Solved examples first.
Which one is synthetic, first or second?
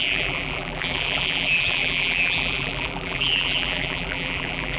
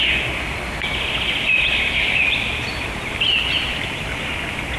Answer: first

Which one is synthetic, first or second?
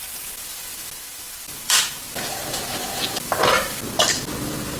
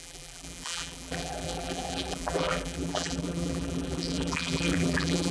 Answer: second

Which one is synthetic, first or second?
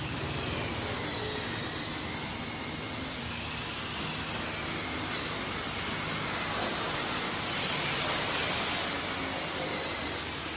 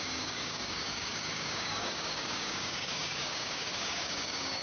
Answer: second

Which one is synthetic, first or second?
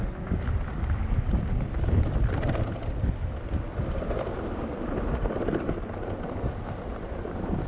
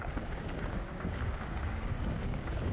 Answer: second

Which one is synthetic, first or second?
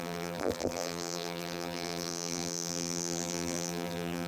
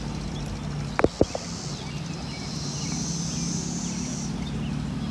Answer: first